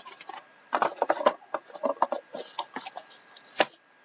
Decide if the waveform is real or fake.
real